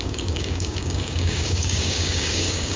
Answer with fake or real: fake